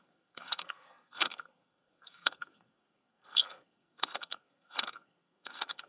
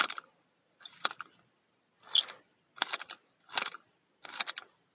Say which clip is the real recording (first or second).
second